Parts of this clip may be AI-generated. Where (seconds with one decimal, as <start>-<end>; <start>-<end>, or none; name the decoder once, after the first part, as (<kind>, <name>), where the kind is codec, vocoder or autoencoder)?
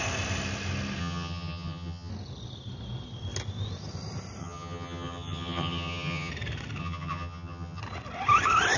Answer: 1.0-2.1 (vocoder, HiFi-GAN); 4.4-6.3; 6.8-7.8